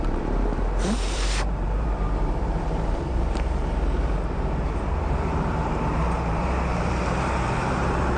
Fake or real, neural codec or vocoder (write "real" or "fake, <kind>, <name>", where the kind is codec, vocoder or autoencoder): fake, vocoder, BigVGAN v2